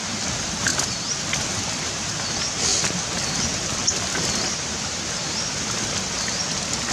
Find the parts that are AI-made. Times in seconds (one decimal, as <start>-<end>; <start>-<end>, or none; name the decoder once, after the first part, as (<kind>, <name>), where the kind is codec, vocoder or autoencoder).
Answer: none